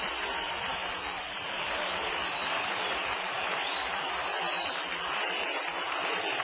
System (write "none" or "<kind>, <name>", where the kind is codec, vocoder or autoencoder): vocoder, BigVGAN v2